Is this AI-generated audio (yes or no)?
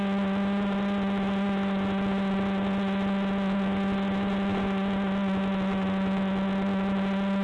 no